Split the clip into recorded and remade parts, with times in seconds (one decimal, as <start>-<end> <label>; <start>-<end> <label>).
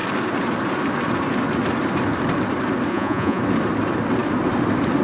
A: 0.0-2.9 recorded; 2.9-3.4 remade; 3.4-5.0 recorded